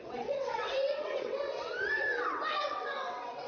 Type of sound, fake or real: fake